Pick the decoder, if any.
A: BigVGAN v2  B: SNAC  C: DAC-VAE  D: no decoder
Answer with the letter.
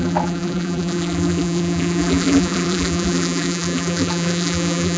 A